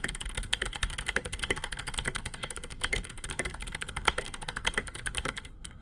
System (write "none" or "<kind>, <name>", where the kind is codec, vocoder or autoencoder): codec, SNAC